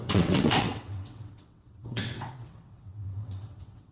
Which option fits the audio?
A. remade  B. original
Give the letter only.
A